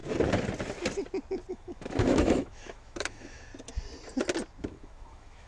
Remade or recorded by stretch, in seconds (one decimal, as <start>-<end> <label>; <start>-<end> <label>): 0.0-1.5 recorded; 1.5-3.5 remade; 3.5-4.6 recorded; 4.6-5.5 remade